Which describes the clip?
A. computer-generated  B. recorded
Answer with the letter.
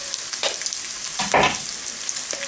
B